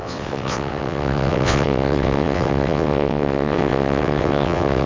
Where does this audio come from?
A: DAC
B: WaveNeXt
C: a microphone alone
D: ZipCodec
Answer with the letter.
B